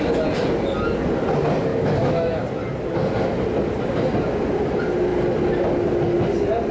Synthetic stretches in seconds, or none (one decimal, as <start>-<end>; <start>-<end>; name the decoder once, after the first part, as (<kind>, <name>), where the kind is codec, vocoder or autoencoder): 1.7-2.4 (autoencoder, DAC-VAE)